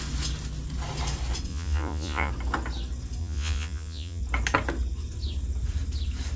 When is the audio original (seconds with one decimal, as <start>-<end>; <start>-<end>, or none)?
0.0-1.5; 2.3-3.2; 4.2-6.4